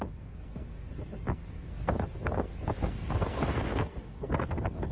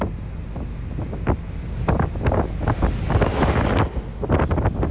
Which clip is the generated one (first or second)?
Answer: first